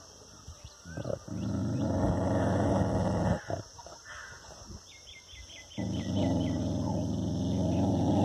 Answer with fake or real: real